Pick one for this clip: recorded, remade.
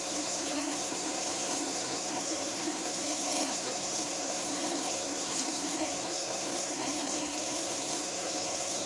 remade